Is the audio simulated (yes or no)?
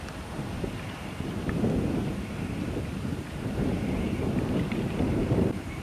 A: yes